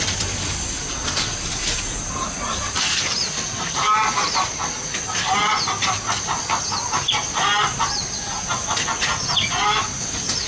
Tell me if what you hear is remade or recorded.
recorded